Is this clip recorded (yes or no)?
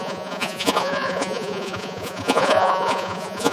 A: no